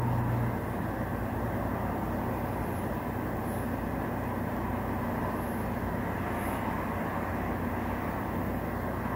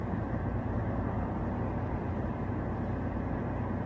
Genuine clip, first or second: first